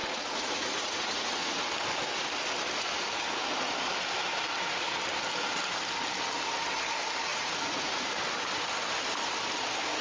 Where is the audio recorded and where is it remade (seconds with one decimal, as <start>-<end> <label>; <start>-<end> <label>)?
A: 0.0-1.7 remade; 1.7-7.3 recorded; 7.3-8.1 remade; 8.1-10.0 recorded